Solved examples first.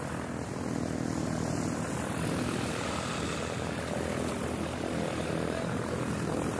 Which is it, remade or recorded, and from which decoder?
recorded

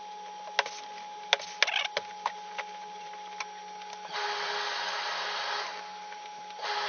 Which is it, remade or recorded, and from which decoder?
recorded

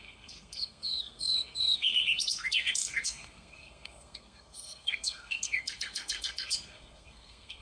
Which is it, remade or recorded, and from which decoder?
remade, codec, SNAC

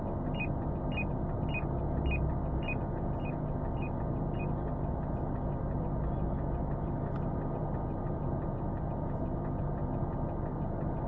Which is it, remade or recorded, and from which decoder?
recorded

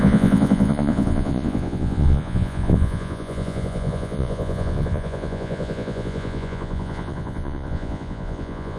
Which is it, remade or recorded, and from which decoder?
remade, vocoder, Vocos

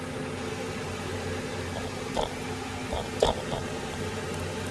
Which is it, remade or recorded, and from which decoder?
recorded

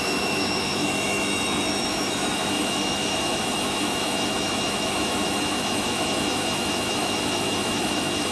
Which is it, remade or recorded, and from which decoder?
remade, autoencoder, DAC-VAE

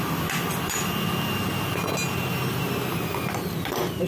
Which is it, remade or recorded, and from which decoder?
recorded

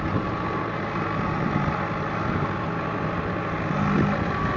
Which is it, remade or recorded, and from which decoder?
recorded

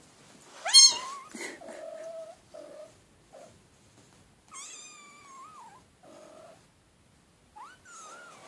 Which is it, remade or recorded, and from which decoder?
recorded